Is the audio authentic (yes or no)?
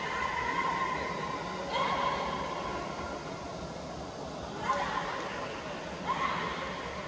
yes